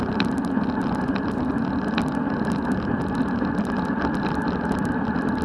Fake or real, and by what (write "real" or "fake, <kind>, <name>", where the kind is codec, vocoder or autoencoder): real